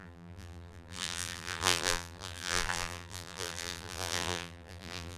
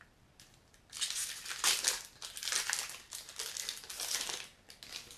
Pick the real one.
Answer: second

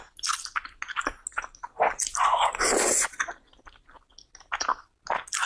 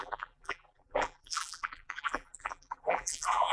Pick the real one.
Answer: first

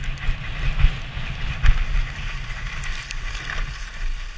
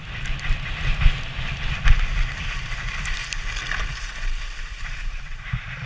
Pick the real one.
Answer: first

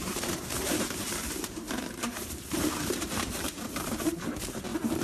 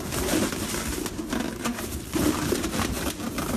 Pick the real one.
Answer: second